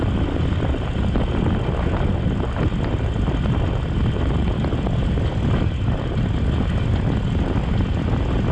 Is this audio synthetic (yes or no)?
no